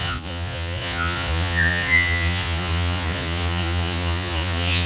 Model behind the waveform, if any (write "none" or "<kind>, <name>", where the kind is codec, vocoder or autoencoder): vocoder, Vocos